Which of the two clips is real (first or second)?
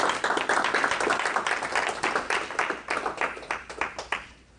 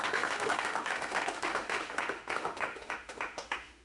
first